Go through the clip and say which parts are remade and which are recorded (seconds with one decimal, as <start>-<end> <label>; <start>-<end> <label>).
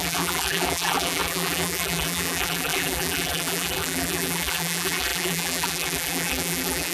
0.0-6.9 remade